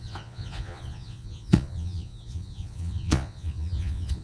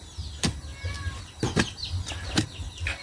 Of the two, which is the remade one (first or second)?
first